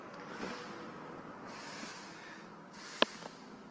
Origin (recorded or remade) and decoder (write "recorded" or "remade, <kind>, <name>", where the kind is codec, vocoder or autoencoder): recorded